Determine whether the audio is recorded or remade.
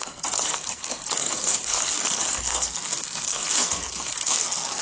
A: remade